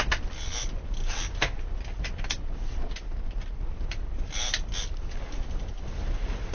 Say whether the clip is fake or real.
real